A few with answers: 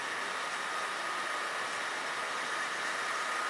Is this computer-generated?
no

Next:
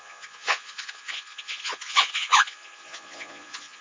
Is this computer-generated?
yes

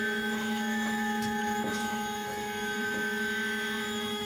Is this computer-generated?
yes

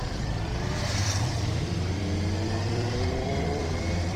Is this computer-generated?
yes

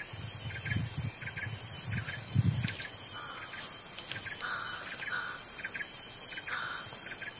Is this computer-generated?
no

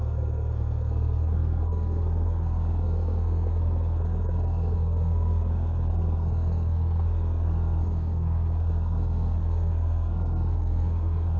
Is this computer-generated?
yes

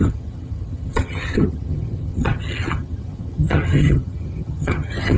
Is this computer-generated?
yes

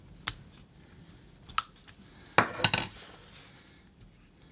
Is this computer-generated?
no